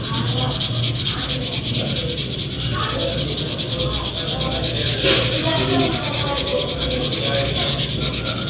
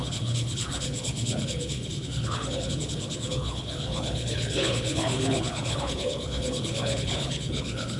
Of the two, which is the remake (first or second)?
second